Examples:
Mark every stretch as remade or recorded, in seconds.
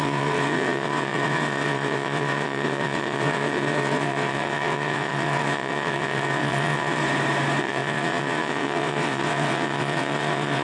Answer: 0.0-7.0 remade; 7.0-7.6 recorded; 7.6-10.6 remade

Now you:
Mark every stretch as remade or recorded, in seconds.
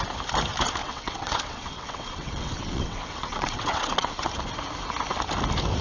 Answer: 0.0-0.8 recorded; 0.8-4.3 remade; 4.3-5.8 recorded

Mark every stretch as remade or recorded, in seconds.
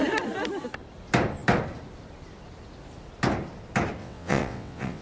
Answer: 0.0-4.0 recorded; 4.0-5.0 remade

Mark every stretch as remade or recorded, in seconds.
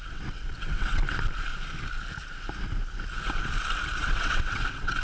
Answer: 0.0-1.0 remade; 1.0-4.0 recorded; 4.0-5.0 remade